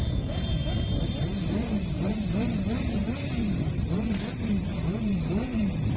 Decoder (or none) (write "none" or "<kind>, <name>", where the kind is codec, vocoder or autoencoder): vocoder, BigVGAN v2